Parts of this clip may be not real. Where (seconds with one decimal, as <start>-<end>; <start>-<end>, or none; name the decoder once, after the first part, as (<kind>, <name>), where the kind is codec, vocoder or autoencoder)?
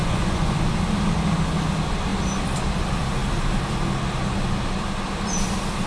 0.0-0.6 (vocoder, Vocos)